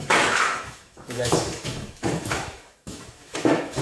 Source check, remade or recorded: remade